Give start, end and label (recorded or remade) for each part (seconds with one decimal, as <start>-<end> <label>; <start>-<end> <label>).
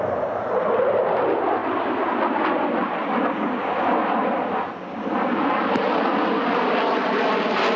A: 0.0-7.8 recorded